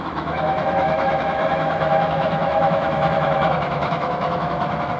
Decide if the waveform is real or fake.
fake